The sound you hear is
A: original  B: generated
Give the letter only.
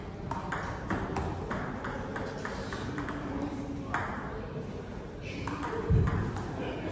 A